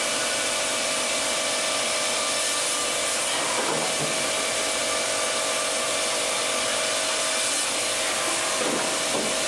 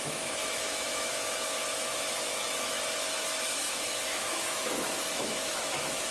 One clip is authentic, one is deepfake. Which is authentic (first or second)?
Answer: first